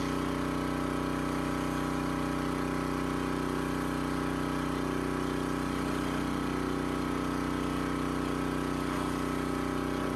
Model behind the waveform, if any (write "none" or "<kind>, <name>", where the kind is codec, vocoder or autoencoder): none